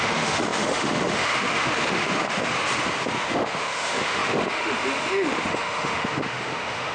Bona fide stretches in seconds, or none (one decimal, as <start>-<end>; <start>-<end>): 2.5-3.2